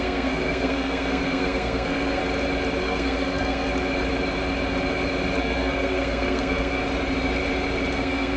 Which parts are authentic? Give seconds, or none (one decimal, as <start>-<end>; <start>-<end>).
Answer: 2.2-2.8; 3.7-5.4; 6.8-7.9